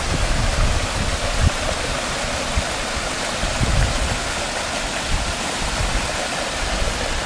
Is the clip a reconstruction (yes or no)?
no